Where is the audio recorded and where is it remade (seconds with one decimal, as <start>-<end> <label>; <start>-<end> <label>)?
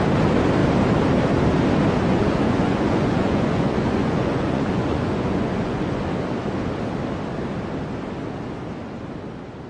0.0-2.1 recorded; 2.1-6.0 remade; 6.0-9.7 recorded